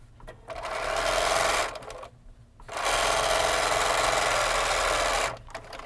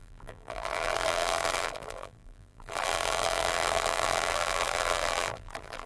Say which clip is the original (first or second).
first